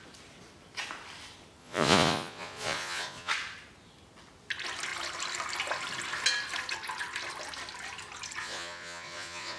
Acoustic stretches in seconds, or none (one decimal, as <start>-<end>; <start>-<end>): 0.0-1.6; 3.3-8.4